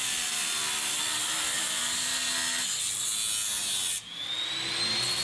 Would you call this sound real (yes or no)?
yes